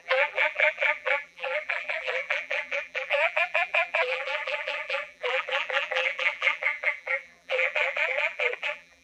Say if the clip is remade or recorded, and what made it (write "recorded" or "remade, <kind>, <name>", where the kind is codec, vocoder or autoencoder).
remade, vocoder, BigVGAN v2